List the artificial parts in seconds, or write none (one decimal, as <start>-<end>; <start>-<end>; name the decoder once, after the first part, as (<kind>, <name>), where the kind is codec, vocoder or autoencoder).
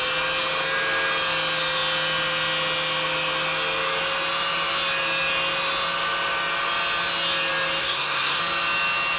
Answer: 7.8-8.4 (codec, SNAC)